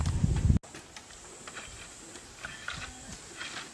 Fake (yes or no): no